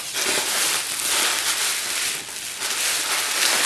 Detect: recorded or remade recorded